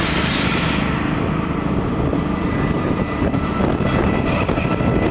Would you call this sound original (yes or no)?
yes